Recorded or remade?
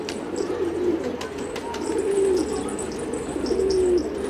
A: recorded